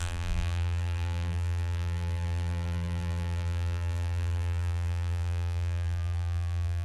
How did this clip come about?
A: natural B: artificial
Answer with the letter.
B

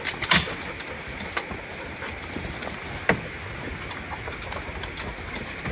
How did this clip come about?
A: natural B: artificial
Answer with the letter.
A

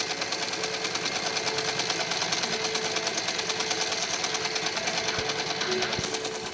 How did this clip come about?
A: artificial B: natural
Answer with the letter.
B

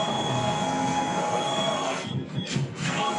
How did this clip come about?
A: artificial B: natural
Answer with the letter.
A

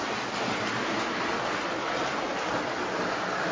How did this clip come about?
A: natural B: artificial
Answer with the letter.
A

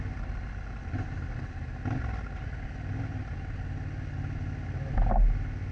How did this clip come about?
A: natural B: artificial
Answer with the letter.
A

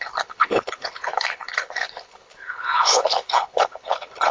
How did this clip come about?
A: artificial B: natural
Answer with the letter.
A